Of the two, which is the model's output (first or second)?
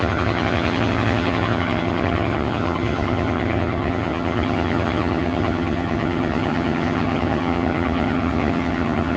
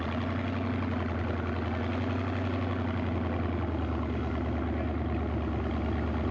first